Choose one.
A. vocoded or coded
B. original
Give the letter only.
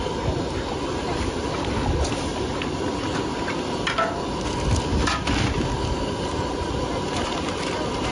B